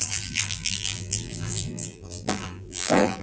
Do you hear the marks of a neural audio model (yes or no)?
yes